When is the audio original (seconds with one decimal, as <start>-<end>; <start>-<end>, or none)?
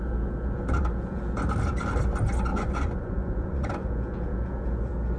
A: 0.0-2.5; 3.9-5.2